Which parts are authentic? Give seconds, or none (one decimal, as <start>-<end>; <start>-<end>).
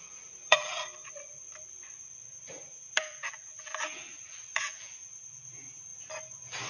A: 0.7-2.5; 5.9-6.7